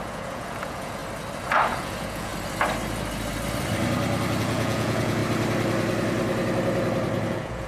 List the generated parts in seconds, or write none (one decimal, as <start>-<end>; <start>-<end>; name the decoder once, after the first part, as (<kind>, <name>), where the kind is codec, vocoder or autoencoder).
0.0-1.0 (vocoder, Vocos); 1.7-2.3; 4.4-5.2; 7.3-7.7